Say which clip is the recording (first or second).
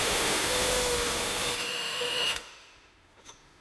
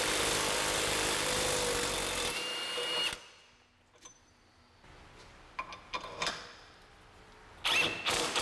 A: second